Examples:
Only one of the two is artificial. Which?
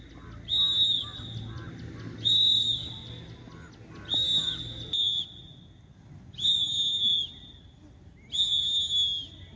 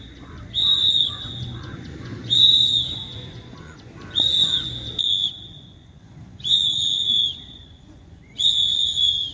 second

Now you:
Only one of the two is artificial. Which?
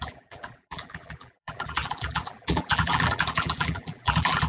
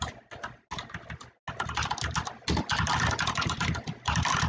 first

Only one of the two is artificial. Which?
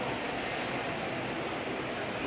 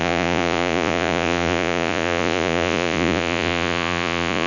second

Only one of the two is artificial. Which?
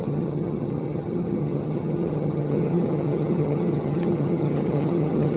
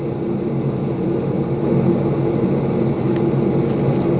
first